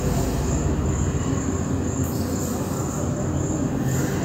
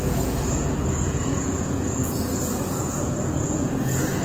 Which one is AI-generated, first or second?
second